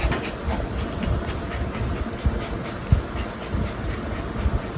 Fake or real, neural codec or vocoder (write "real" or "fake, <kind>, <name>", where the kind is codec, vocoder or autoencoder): real